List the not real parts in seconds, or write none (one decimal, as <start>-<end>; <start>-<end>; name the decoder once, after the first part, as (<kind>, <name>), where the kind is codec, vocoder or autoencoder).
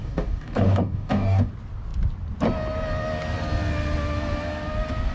0.0-1.5 (codec, DAC)